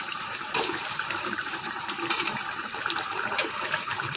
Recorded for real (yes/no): no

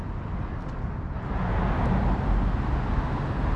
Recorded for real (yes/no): yes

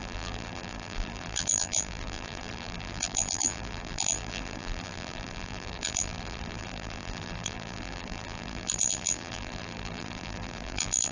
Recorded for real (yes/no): no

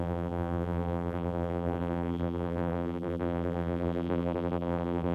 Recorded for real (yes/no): no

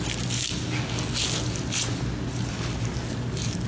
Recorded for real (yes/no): yes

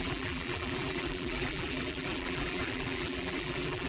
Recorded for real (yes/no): no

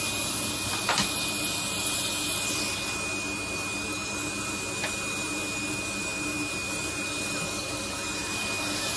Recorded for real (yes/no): yes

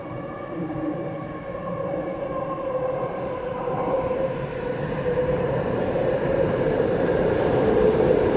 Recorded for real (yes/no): no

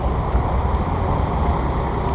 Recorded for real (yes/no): yes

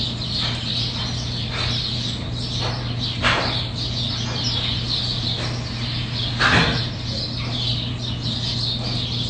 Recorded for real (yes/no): yes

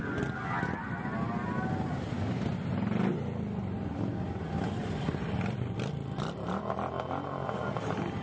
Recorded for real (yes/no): yes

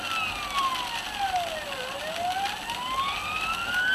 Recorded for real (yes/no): yes